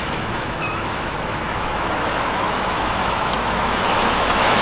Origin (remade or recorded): remade